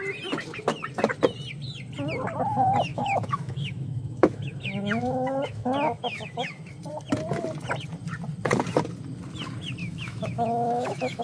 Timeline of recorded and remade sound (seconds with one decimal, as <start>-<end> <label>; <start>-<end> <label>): 0.0-2.9 recorded; 2.9-6.7 remade; 6.7-9.8 recorded; 9.8-11.2 remade